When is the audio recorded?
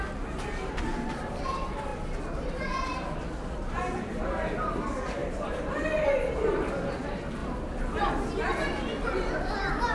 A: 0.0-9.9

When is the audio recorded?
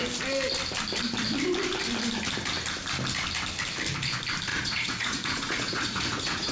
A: 0.0-4.5